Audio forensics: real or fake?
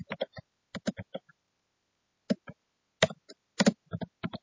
real